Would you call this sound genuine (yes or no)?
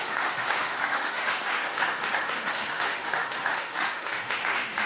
no